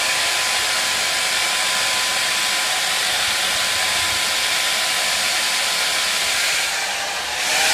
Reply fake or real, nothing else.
real